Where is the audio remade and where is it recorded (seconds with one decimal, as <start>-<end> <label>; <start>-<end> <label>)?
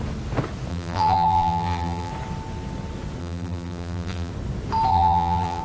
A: 0.0-0.7 recorded; 0.7-2.1 remade; 2.1-3.2 recorded; 3.2-4.3 remade; 4.3-4.9 recorded; 4.9-5.6 remade